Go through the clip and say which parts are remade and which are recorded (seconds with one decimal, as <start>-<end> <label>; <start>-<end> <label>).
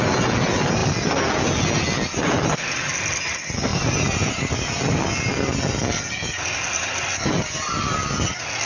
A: 0.0-8.7 recorded